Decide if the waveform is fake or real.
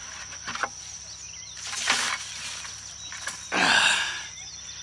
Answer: real